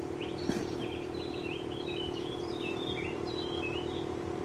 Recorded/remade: remade